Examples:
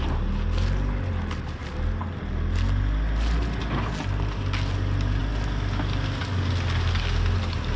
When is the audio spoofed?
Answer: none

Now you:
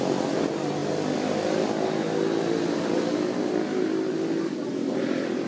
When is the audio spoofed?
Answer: none

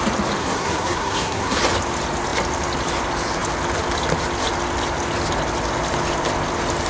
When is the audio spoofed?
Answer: 0.4-1.6 (codec, SNAC)

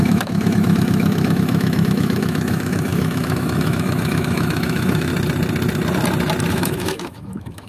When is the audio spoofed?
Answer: 0.0-5.1 (autoencoder, DAC-VAE); 6.5-7.7

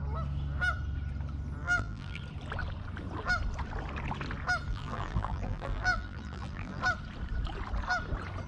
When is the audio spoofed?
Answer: 1.6-2.2 (vocoder, BigVGAN v2); 4.7-6.8

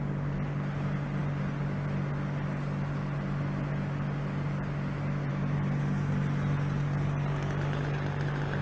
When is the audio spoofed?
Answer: none

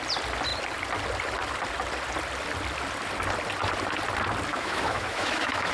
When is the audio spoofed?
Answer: 4.5-5.7 (autoencoder, DAC-VAE)